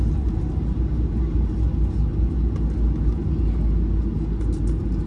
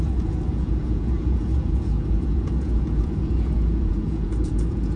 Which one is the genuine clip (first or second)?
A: first